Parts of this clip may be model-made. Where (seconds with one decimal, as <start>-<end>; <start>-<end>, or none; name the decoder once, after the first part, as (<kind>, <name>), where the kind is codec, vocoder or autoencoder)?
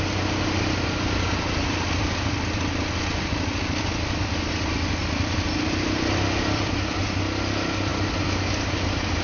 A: 5.0-7.0 (vocoder, BigVGAN v2)